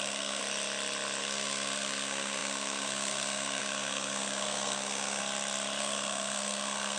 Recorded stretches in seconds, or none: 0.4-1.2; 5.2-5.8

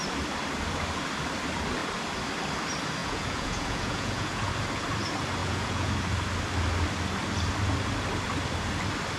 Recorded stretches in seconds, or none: 0.0-3.0; 4.5-5.4; 5.9-9.2